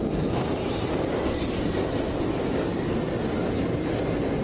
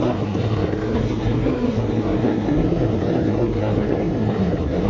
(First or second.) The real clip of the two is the first